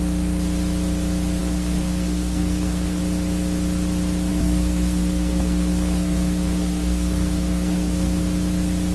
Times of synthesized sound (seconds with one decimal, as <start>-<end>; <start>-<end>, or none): 1.4-3.0; 4.3-8.2